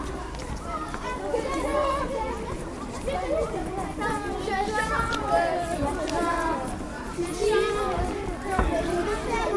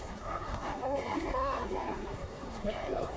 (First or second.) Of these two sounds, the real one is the first